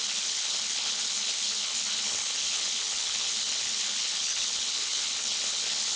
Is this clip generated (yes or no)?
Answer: yes